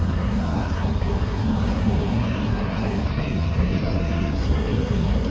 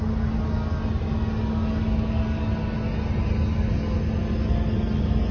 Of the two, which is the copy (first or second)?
first